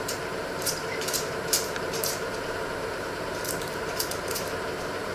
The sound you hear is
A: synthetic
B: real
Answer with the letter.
A